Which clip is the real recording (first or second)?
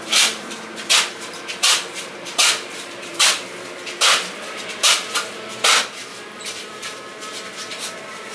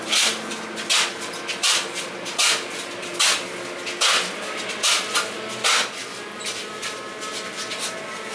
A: second